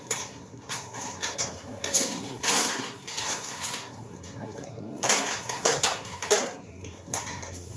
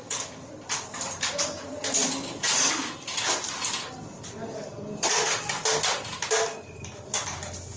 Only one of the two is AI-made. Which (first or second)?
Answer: first